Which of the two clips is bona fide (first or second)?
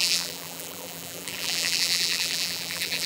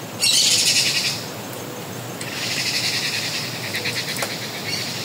second